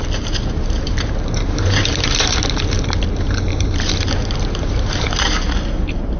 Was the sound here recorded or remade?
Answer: remade